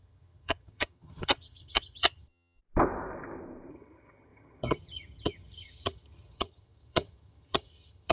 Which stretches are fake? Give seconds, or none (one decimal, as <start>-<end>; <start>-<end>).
0.0-2.6; 3.7-8.1